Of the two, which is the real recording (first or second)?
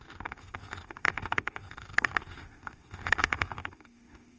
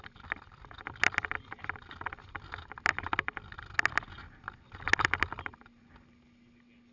second